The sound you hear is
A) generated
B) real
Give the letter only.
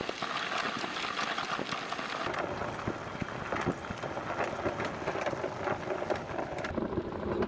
B